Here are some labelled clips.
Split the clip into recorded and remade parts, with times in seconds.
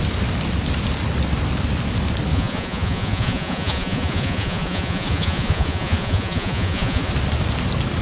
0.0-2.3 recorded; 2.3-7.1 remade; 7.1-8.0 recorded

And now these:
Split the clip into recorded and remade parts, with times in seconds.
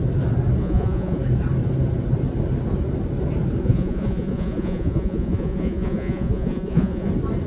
0.0-0.6 recorded; 0.6-1.2 remade; 1.2-3.6 recorded; 3.6-7.1 remade; 7.1-7.5 recorded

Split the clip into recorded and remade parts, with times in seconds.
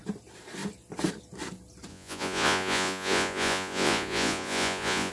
0.0-1.9 recorded; 1.9-5.1 remade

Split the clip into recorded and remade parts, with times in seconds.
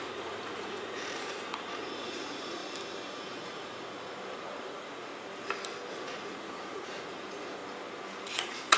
0.0-2.6 remade; 2.6-3.1 recorded; 3.1-5.1 remade; 5.1-5.9 recorded; 5.9-7.6 remade; 7.6-8.3 recorded; 8.3-8.8 remade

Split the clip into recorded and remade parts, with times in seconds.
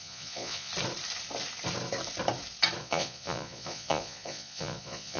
0.0-0.7 remade; 0.7-2.8 recorded; 2.8-5.2 remade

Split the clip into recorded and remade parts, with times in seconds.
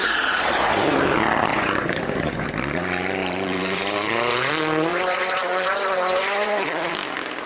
0.0-1.5 recorded; 1.5-2.5 remade; 2.5-3.2 recorded; 3.2-4.5 remade; 4.5-4.9 recorded; 4.9-6.9 remade; 6.9-7.5 recorded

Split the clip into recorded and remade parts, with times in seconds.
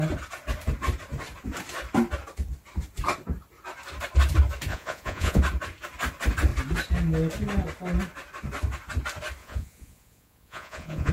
0.0-4.7 recorded; 4.7-5.4 remade; 5.4-9.4 recorded; 9.4-11.1 remade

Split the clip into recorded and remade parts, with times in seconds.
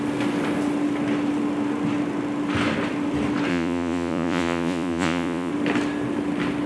0.0-3.5 recorded; 3.5-5.5 remade; 5.5-6.7 recorded